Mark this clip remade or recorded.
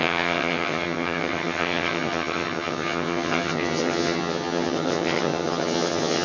remade